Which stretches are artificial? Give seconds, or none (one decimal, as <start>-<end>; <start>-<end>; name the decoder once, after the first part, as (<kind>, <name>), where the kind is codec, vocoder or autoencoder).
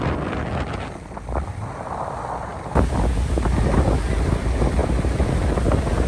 none